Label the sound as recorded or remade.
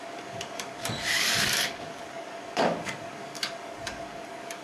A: remade